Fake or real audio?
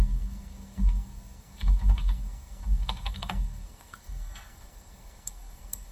fake